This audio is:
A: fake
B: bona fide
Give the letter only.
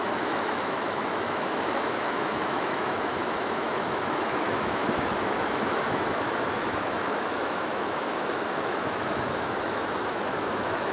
A